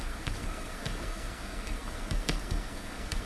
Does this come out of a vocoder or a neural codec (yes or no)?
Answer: yes